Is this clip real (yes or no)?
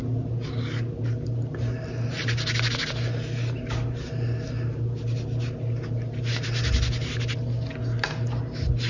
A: yes